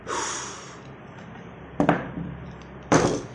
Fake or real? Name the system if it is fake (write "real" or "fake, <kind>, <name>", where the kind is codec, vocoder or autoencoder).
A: fake, vocoder, BigVGAN v2